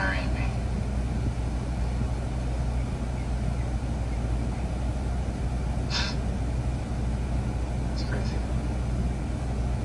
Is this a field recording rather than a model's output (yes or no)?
yes